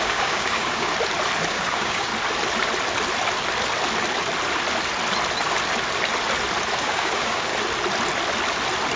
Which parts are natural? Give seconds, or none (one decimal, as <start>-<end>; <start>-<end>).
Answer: 0.9-1.5; 2.1-6.8; 7.5-9.0